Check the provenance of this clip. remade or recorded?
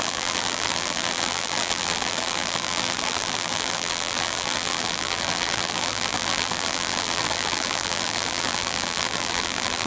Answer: remade